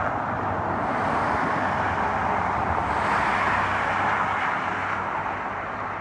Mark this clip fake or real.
real